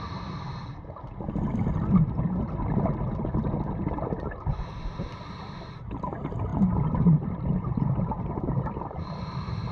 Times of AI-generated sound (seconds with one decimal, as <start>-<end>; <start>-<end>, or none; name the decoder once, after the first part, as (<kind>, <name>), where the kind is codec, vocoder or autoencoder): none